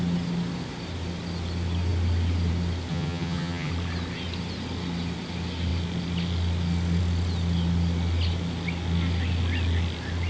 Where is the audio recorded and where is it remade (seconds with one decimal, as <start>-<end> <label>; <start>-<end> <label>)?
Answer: 0.0-2.9 recorded; 2.9-3.7 remade; 3.7-10.3 recorded